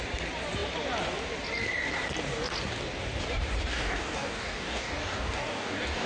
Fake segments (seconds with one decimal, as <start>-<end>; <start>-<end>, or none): 3.7-6.1